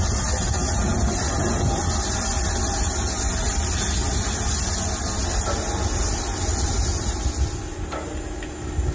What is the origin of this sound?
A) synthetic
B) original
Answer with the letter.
B